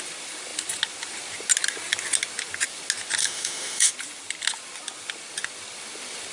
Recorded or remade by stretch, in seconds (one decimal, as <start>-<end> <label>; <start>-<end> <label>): 0.0-3.2 recorded; 3.2-3.9 remade; 3.9-6.3 recorded